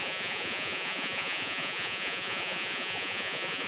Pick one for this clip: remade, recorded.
remade